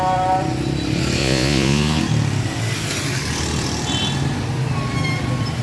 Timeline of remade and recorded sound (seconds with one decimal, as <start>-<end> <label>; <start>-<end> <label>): 0.0-1.2 recorded; 1.2-2.0 remade; 2.0-5.6 recorded